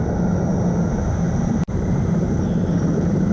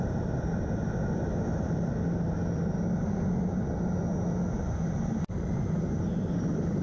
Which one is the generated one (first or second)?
first